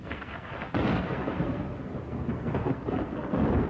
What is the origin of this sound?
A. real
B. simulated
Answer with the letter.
B